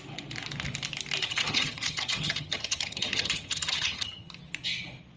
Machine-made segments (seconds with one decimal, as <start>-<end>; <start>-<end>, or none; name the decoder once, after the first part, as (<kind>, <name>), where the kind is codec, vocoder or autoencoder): 1.2-4.3 (vocoder, HiFi-GAN)